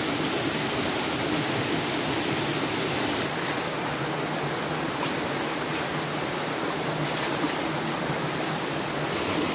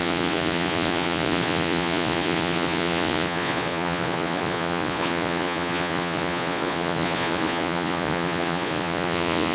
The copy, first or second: second